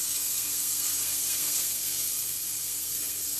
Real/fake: fake